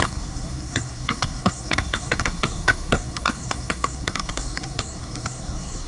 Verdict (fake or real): fake